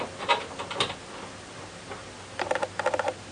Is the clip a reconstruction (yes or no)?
no